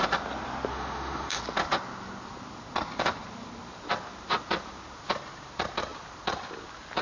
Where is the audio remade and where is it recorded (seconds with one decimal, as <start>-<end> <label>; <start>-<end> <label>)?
0.0-0.7 recorded; 0.7-1.4 remade; 1.4-7.0 recorded